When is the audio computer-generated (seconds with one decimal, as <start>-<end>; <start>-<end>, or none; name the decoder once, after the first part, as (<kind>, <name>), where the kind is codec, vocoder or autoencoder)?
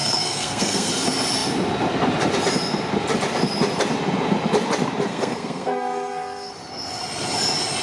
0.0-0.9 (codec, SNAC); 5.1-6.5